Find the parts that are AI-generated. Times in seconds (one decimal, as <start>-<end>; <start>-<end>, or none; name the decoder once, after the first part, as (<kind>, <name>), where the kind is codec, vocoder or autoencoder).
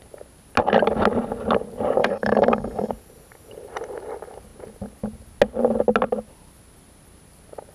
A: 2.0-2.9 (codec, DAC)